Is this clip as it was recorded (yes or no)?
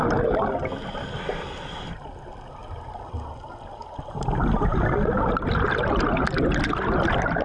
yes